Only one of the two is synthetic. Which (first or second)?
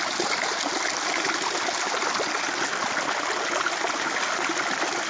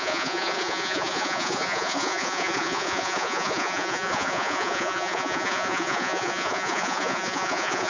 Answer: second